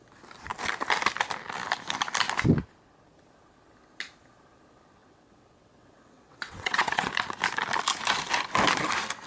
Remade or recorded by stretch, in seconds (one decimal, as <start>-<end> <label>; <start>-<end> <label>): 0.0-5.0 recorded; 5.0-7.1 remade; 7.1-9.3 recorded